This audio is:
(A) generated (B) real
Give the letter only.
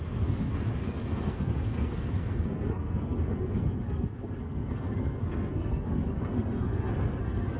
A